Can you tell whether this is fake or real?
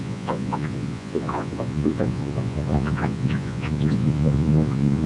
fake